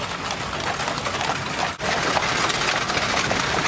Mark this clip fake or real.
real